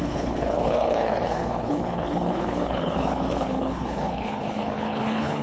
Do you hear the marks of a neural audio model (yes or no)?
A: yes